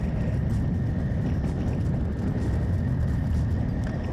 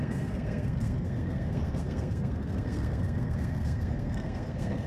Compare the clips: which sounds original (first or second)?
first